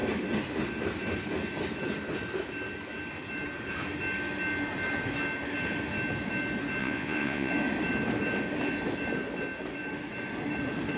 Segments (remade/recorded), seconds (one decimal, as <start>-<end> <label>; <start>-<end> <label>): 0.0-6.8 recorded; 6.8-7.5 remade; 7.5-11.0 recorded